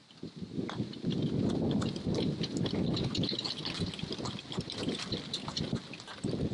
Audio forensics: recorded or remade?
recorded